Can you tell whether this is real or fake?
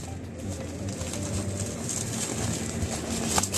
real